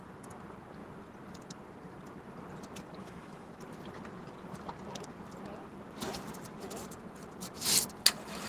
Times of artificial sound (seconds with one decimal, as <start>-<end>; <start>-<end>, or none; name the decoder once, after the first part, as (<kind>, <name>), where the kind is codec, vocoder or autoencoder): 3.0-3.5 (autoencoder, DAC-VAE)